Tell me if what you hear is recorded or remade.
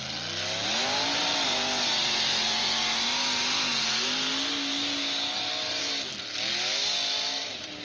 recorded